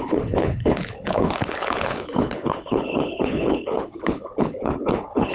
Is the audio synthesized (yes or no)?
yes